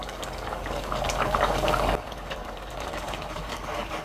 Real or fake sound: fake